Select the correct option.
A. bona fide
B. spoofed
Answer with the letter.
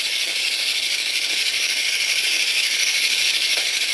B